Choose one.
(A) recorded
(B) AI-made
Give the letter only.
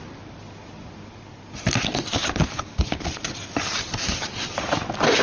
A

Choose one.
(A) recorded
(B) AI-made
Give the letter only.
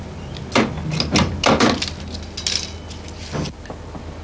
A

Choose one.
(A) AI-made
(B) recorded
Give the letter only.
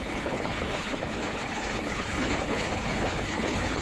A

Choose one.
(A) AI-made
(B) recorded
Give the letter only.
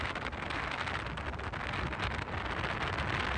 B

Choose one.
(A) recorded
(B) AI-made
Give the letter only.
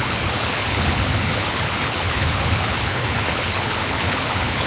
B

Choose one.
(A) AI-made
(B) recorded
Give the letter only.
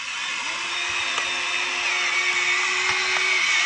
B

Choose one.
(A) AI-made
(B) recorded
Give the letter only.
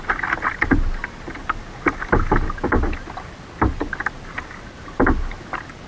B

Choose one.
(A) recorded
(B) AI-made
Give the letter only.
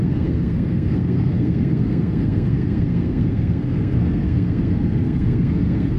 B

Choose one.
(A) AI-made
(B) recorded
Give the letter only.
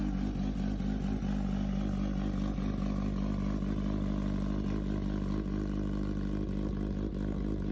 B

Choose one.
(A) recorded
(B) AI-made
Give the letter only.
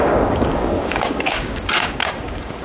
B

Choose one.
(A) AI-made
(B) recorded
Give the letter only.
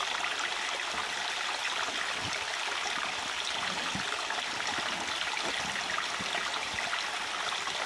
B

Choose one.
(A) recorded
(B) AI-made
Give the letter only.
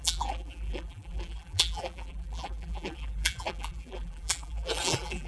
B